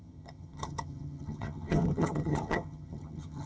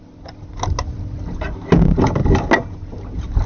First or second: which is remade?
first